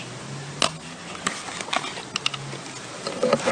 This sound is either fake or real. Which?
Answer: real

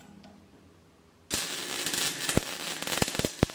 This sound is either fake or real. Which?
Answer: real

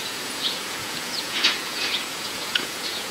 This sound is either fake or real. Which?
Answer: fake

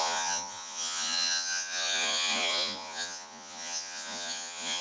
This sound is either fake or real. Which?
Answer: fake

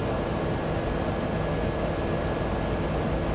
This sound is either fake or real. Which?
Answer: real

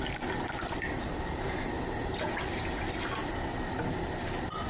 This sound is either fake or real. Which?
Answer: real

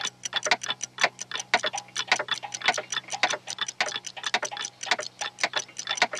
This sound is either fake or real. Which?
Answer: real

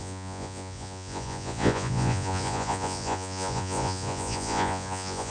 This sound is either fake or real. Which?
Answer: fake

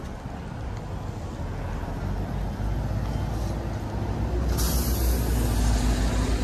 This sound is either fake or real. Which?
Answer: real